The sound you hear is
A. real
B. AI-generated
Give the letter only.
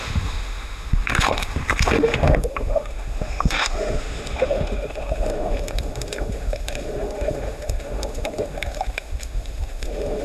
B